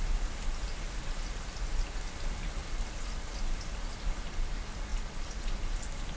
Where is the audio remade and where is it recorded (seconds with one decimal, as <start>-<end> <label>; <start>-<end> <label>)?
0.0-4.9 recorded; 4.9-5.4 remade; 5.4-6.2 recorded